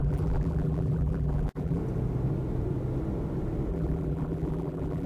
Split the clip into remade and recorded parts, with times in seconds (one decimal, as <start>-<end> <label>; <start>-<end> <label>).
0.0-1.8 remade; 1.8-3.7 recorded; 3.7-5.1 remade